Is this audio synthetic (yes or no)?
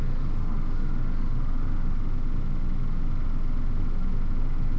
no